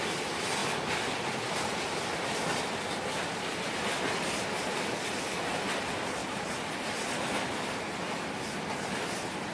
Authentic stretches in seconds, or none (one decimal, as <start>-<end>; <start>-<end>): 0.0-6.2; 8.0-9.5

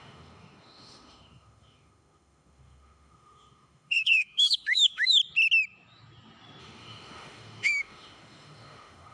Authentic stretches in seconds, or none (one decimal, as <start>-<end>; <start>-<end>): 5.2-6.6

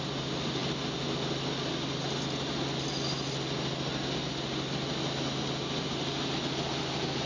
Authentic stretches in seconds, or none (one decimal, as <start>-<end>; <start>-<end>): 0.0-7.3

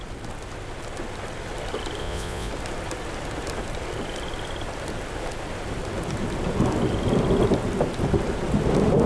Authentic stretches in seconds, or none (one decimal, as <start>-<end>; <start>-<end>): 0.0-2.0; 2.5-9.1

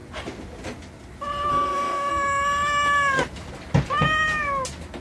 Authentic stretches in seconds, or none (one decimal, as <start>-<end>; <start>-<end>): 0.0-1.5; 2.1-5.0

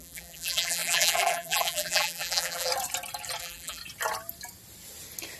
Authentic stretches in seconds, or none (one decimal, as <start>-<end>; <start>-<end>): 2.7-3.4; 3.8-5.4

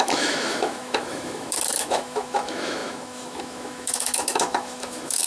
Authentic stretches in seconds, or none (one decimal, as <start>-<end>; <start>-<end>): none